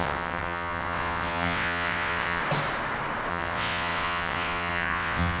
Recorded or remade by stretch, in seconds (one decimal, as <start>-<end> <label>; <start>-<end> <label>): 0.0-2.4 remade; 2.4-3.3 recorded; 3.3-5.4 remade